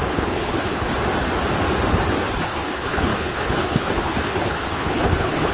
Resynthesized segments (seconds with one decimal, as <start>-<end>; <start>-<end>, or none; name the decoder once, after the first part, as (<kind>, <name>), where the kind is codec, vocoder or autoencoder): 0.0-0.9 (codec, HILCodec); 2.4-5.5